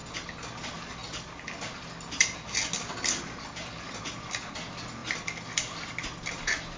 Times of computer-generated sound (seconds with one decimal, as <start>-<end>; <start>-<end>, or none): none